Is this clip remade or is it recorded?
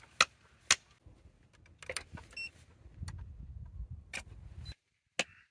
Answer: recorded